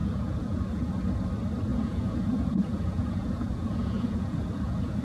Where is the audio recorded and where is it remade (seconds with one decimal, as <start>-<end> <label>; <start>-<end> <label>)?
0.0-0.9 remade; 0.9-1.7 recorded; 1.7-5.0 remade